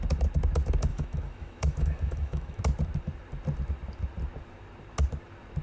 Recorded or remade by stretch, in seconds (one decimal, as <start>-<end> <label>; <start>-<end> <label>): 0.0-0.9 recorded; 0.9-2.6 remade; 2.6-5.6 recorded